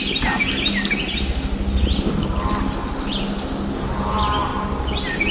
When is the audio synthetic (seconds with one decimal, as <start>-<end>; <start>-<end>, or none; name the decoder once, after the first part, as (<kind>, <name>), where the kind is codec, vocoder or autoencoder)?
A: none